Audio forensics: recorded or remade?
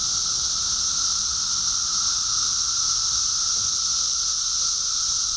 recorded